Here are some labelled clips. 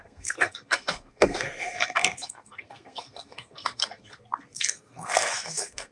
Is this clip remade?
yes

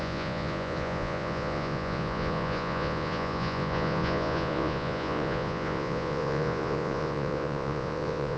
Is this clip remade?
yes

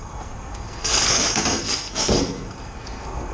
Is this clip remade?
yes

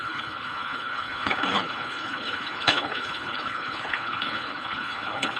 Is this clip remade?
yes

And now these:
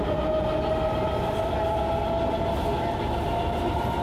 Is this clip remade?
no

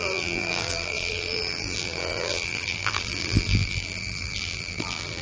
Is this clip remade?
yes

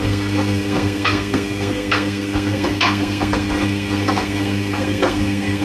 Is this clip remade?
yes